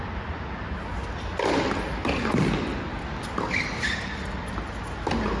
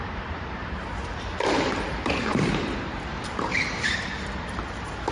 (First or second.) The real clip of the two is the first